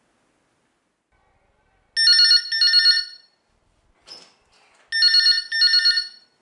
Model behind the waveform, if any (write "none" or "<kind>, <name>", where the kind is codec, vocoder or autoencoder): none